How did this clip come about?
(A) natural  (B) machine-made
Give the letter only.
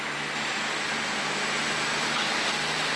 A